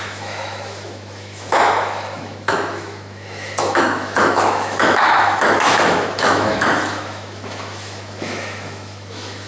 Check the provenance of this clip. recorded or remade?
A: remade